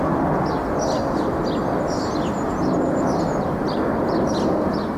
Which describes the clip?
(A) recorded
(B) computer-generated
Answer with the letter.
A